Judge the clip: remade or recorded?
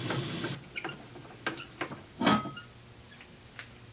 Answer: recorded